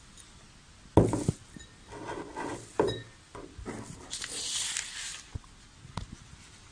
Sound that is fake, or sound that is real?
real